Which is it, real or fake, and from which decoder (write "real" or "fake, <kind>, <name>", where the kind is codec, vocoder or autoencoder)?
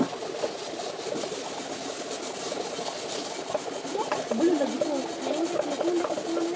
real